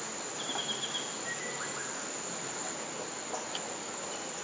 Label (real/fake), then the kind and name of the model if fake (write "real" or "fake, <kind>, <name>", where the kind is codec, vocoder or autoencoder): real